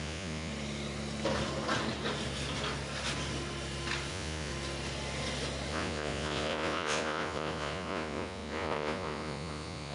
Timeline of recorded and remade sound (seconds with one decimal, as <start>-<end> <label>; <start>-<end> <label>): 0.0-0.5 remade; 0.5-4.1 recorded; 4.1-4.5 remade; 4.5-5.7 recorded; 5.7-9.9 remade